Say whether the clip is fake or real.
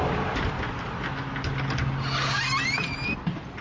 real